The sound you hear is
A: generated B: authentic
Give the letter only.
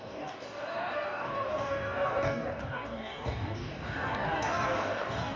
A